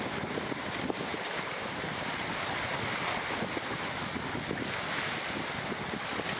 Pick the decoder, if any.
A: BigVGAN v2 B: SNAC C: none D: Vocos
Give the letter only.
C